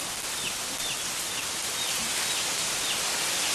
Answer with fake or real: real